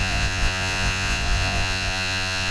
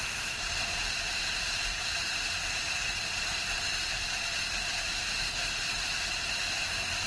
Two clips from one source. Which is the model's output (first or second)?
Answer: first